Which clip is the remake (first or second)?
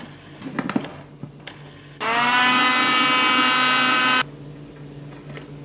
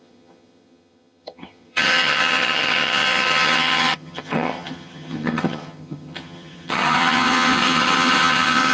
second